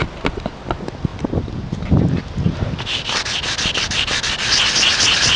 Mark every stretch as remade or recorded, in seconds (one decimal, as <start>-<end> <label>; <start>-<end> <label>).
0.0-5.4 recorded